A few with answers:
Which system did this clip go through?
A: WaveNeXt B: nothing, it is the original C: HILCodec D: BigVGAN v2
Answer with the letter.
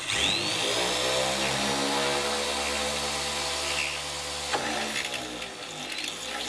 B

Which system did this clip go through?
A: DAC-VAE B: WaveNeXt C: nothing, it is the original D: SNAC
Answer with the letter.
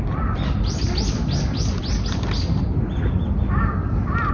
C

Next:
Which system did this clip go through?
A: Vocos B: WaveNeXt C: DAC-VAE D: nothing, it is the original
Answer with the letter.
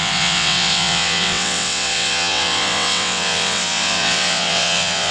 B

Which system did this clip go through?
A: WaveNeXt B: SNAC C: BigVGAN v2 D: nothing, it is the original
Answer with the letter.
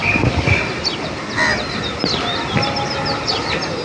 D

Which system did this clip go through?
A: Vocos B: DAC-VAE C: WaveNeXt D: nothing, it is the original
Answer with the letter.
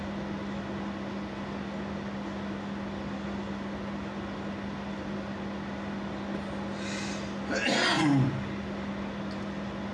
D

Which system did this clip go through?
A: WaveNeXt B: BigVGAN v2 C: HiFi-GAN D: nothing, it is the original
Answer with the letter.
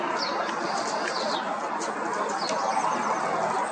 D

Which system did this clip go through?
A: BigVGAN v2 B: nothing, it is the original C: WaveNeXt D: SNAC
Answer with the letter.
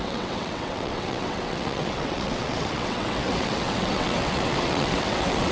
C